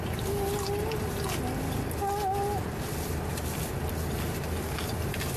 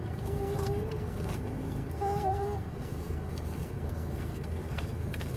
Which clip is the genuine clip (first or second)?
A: first